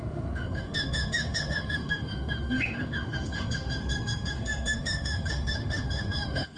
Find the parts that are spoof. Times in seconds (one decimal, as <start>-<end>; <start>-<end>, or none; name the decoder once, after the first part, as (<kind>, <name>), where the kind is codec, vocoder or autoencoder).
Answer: 0.0-6.6 (autoencoder, DAC-VAE)